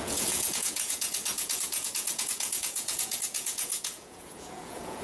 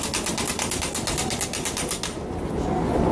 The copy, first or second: first